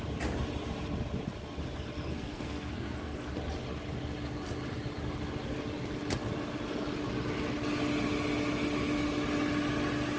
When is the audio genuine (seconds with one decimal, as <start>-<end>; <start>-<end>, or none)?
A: 0.0-2.1; 3.3-10.2